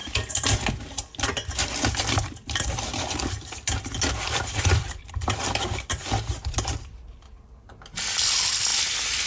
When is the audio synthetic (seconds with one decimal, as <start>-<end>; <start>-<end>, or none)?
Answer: 0.0-5.1; 6.4-7.3